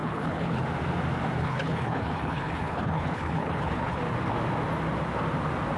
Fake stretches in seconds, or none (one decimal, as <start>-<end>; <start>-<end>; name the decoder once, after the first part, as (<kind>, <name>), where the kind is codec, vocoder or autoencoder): 0.0-0.6 (codec, HILCodec); 1.4-4.0